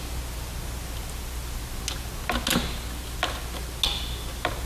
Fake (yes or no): no